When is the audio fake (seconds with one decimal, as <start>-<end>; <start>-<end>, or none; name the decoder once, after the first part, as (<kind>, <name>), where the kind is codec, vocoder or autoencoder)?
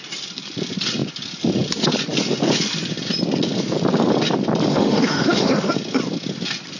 4.7-5.7 (autoencoder, DAC-VAE)